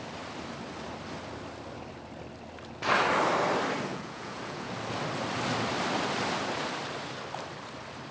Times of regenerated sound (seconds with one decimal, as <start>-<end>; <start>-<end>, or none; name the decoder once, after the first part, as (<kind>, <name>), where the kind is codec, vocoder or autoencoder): 3.9-4.7 (vocoder, Vocos)